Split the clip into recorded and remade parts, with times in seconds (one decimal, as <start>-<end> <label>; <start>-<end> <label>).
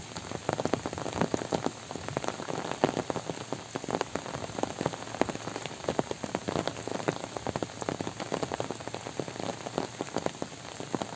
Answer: 0.0-11.2 recorded